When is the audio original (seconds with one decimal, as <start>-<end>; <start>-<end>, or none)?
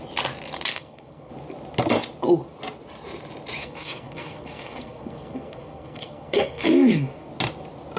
0.0-0.7; 1.3-3.6; 7.3-8.0